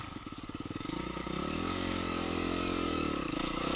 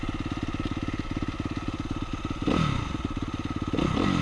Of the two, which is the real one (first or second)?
second